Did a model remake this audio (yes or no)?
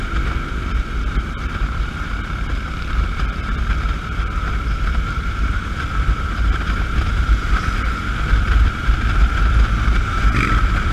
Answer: yes